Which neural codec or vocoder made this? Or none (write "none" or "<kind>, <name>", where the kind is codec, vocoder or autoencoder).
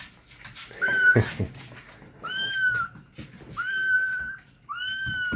none